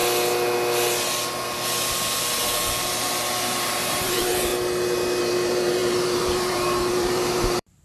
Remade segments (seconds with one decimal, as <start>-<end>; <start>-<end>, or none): 2.8-4.5; 5.2-7.8